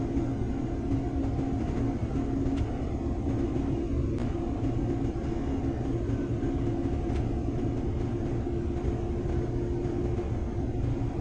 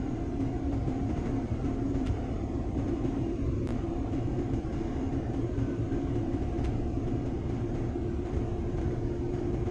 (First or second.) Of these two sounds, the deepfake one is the second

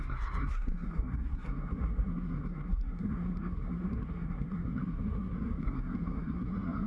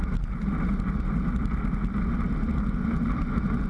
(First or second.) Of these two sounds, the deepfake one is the first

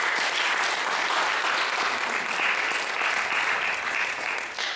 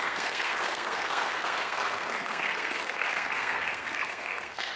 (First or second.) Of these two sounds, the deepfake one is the second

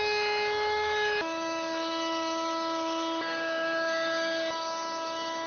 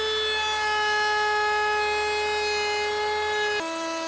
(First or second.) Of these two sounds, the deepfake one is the first